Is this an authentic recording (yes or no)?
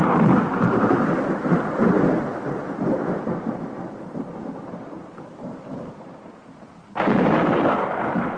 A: no